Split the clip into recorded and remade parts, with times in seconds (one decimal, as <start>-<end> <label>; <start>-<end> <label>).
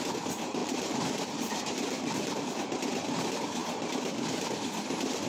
0.0-0.6 recorded; 0.6-2.5 remade; 2.5-5.3 recorded